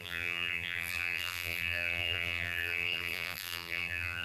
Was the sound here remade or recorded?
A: remade